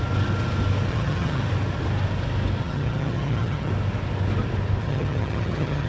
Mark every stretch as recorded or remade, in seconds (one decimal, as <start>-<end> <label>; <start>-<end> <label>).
0.0-0.9 recorded; 0.9-1.4 remade; 1.4-2.6 recorded; 2.6-3.7 remade; 3.7-4.8 recorded; 4.8-5.9 remade